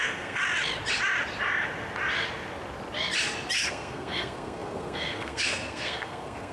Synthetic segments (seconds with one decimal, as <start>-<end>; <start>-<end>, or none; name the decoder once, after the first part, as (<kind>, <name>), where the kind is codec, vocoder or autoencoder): 0.0-0.4 (codec, SNAC); 3.7-6.5